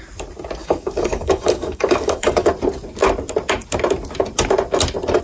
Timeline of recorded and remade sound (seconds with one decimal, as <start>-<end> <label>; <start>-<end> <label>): 0.0-0.6 recorded; 0.6-2.5 remade; 2.5-5.2 recorded